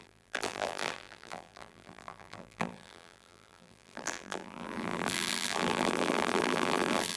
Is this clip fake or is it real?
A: fake